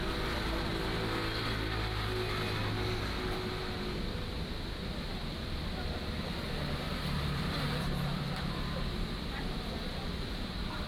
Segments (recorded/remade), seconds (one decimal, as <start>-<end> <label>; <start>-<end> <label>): 0.0-0.7 remade; 0.7-4.8 recorded; 4.8-10.9 remade